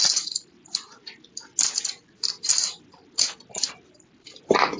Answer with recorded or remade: recorded